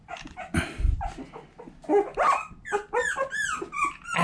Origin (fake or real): real